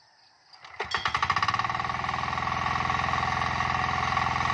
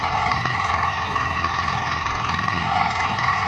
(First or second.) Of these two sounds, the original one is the first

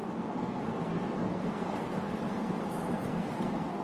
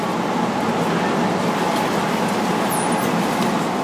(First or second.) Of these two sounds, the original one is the second